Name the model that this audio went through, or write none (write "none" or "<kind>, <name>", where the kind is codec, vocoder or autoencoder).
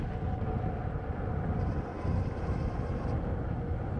none